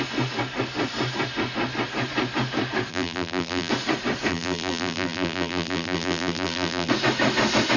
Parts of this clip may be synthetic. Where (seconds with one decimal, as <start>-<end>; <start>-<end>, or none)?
2.9-3.7; 4.3-6.9